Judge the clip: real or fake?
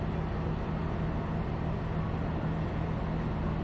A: real